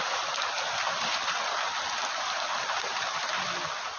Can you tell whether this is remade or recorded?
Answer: remade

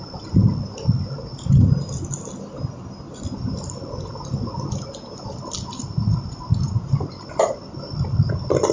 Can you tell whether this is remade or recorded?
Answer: recorded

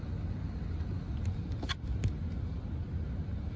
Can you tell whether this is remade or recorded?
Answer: recorded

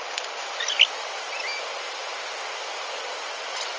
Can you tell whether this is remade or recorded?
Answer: recorded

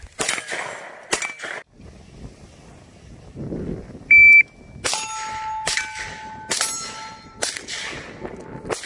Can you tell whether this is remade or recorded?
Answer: recorded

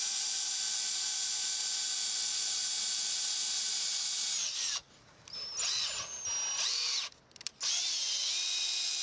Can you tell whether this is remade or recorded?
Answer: recorded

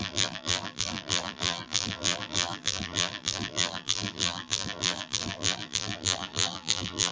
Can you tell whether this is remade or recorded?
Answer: remade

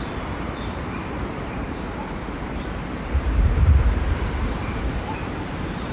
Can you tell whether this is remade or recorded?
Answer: remade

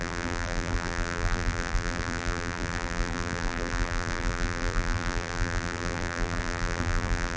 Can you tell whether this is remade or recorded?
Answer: remade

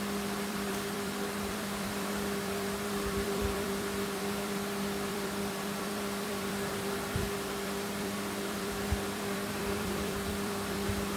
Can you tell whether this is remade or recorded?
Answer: remade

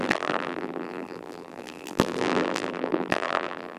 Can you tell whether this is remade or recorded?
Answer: remade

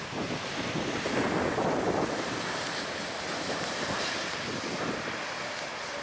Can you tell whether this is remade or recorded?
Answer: recorded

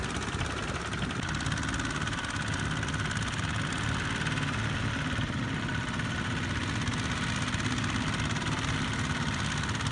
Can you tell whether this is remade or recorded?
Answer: recorded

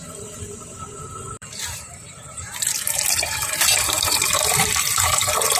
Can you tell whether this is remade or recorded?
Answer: remade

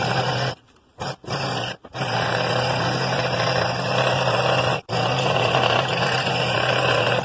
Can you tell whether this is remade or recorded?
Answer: remade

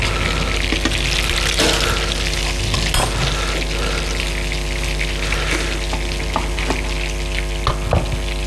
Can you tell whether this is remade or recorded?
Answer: recorded